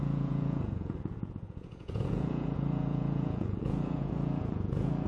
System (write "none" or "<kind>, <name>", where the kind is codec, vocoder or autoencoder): vocoder, Vocos